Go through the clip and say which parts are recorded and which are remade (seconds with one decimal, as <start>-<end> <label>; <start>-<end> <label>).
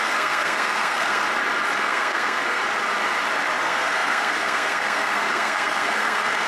0.0-1.2 remade; 1.2-1.8 recorded; 1.8-2.6 remade; 2.6-3.6 recorded; 3.6-6.5 remade